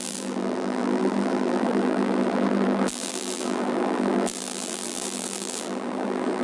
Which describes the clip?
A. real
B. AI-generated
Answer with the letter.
B